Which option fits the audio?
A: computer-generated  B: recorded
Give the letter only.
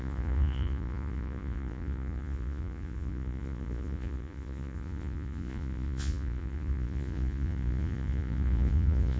A